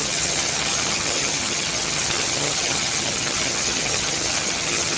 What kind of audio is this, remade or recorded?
remade